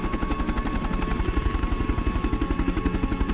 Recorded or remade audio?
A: recorded